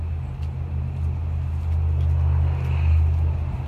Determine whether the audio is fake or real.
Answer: real